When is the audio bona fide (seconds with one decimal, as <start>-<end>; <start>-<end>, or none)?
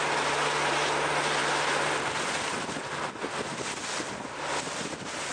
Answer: 0.0-5.3